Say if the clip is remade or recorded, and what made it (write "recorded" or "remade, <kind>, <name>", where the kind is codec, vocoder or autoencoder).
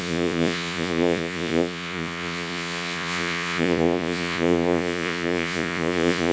remade, vocoder, Vocos